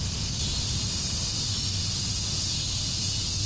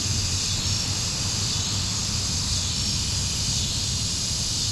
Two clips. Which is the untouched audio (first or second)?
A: first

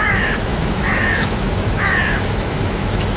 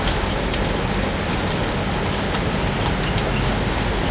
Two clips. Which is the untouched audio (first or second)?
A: second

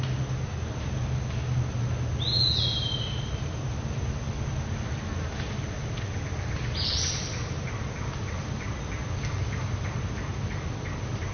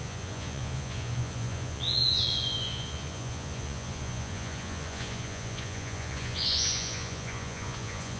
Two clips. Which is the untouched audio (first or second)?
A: first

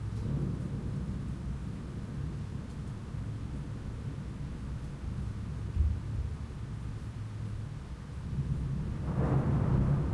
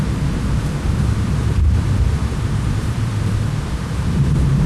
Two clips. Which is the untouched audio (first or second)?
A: first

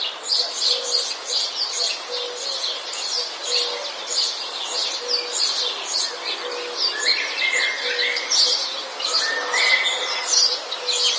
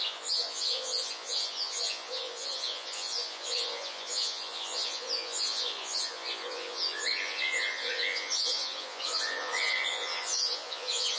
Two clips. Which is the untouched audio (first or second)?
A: first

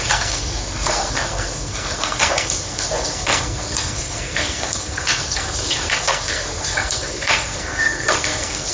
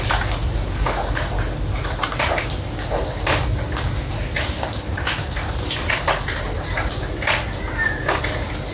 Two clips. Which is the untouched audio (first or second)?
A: second